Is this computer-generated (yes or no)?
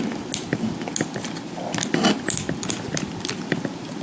no